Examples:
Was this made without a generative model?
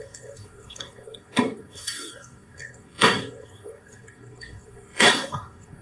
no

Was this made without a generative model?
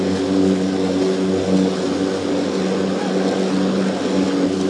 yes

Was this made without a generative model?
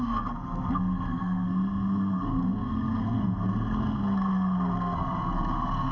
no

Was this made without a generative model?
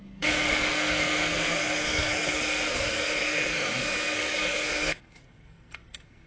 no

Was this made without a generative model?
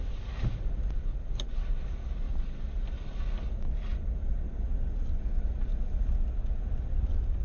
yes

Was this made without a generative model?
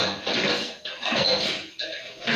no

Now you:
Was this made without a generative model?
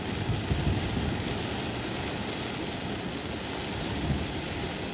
yes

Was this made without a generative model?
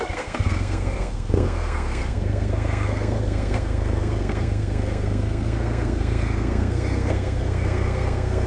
no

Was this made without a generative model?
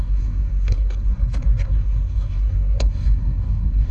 no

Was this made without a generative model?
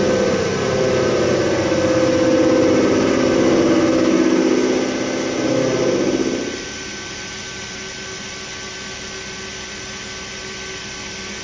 yes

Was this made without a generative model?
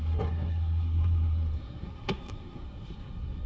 no